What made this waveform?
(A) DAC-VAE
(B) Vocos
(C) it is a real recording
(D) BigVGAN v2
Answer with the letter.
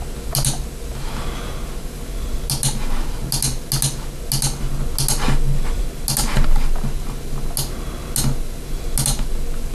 C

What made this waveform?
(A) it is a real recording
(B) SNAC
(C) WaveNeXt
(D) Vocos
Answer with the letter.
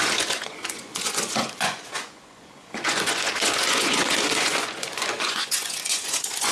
D